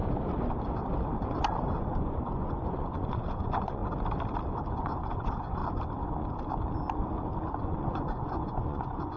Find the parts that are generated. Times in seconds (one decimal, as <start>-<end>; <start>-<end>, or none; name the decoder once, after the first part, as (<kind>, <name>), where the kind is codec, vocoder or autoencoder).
1.8-3.8 (vocoder, Vocos); 4.7-5.6; 7.6-9.2